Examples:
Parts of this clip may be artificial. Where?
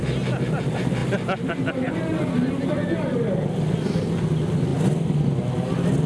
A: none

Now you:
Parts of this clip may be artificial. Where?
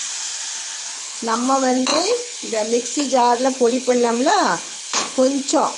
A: 1.0-5.8 (codec, HILCodec)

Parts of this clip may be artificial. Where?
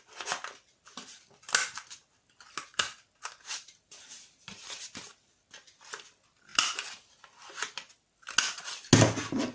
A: 2.7-4.8 (vocoder, BigVGAN v2); 6.5-7.2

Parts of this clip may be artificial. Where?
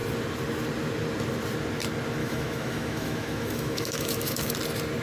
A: 2.2-4.5 (autoencoder, DAC-VAE)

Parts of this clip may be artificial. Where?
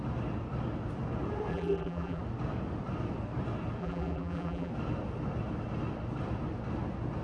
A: 1.5-2.2 (vocoder, BigVGAN v2); 3.8-4.7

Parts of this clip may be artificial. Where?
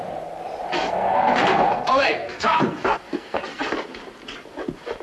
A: 0.7-3.7 (codec, SNAC)